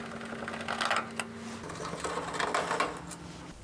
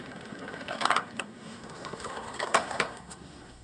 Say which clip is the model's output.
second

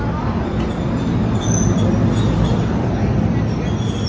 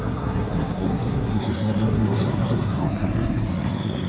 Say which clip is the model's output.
second